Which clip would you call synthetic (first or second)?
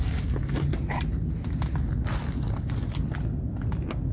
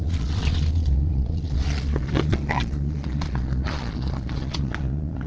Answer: second